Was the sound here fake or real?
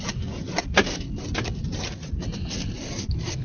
fake